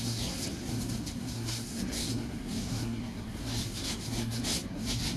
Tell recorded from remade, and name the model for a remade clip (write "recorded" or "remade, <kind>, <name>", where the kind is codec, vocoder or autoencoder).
remade, codec, SNAC